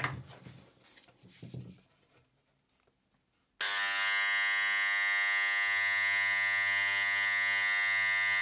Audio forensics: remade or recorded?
recorded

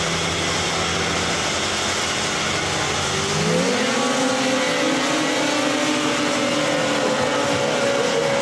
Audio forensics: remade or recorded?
recorded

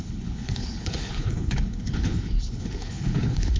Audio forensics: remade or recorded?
remade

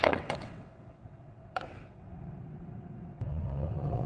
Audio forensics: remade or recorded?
remade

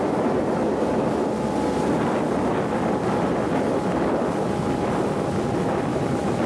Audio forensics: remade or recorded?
recorded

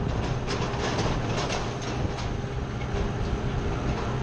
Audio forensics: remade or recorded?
recorded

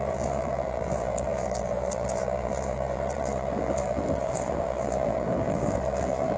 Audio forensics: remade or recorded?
remade